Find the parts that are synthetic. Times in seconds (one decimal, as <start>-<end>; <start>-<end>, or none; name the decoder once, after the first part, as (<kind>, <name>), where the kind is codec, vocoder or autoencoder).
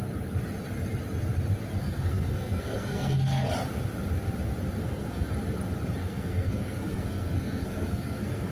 1.8-3.5 (codec, SNAC); 4.8-5.3; 6.0-8.5